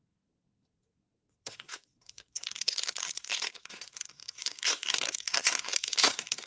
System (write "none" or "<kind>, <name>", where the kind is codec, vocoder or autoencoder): codec, SNAC